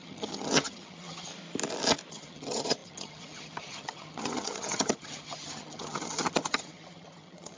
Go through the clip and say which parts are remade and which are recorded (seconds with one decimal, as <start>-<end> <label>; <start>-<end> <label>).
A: 0.0-1.3 remade; 1.3-2.1 recorded; 2.1-7.6 remade